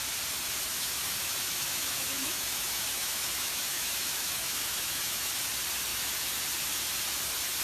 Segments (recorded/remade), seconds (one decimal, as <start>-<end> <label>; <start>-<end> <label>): 0.0-0.7 recorded; 0.7-5.3 remade; 5.3-5.9 recorded; 5.9-6.4 remade; 6.4-7.6 recorded